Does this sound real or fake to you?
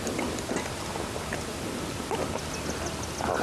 real